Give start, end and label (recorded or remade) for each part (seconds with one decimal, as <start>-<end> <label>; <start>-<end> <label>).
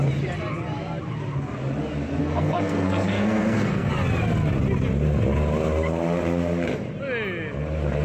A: 0.0-2.2 recorded; 2.2-3.9 remade; 3.9-8.0 recorded